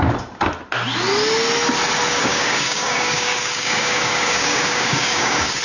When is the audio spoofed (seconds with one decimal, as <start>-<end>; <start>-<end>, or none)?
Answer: 2.3-5.6